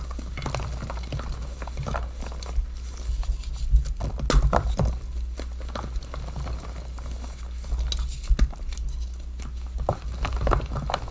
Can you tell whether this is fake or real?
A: real